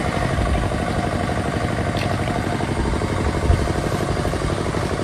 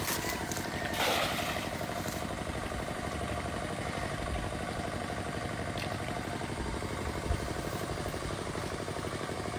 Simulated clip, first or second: second